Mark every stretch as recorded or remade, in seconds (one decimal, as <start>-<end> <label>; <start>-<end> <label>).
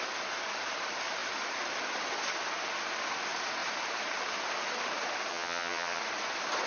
0.0-5.3 recorded; 5.3-6.0 remade; 6.0-6.7 recorded